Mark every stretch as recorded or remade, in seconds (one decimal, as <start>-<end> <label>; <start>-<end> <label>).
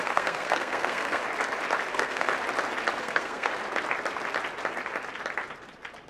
0.0-1.2 remade; 1.2-1.9 recorded; 1.9-2.3 remade; 2.3-3.0 recorded; 3.0-3.5 remade; 3.5-6.1 recorded